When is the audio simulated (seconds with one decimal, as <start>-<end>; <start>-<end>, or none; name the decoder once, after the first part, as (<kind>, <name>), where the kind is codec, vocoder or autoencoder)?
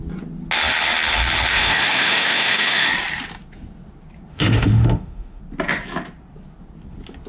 1.5-2.9 (autoencoder, DAC-VAE); 4.3-5.4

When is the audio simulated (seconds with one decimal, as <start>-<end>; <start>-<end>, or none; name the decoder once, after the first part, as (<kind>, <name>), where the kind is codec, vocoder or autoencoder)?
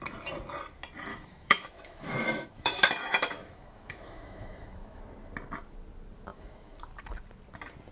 1.1-5.0 (autoencoder, DAC-VAE); 6.3-6.8